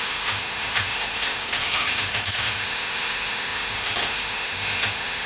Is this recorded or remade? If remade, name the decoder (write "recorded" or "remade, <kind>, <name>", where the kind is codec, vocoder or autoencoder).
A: remade, autoencoder, DAC-VAE